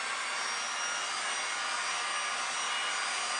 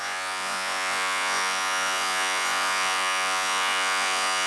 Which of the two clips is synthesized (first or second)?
second